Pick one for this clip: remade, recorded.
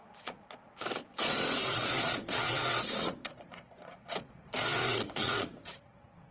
remade